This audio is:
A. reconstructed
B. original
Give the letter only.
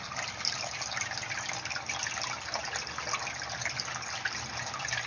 B